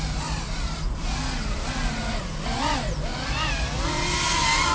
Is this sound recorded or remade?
recorded